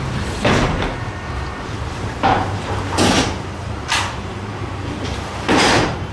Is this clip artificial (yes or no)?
yes